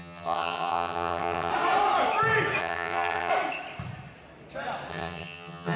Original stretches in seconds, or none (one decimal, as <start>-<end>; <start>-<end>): 1.5-2.6; 3.3-4.9